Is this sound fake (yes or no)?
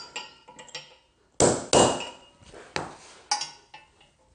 no